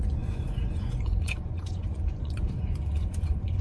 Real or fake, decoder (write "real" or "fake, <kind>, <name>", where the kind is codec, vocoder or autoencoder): fake, vocoder, Vocos